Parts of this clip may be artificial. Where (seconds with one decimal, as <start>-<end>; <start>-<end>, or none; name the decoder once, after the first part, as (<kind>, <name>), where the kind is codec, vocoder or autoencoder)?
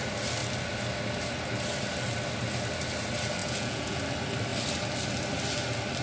3.4-4.0 (vocoder, Vocos)